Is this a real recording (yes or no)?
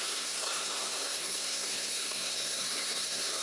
no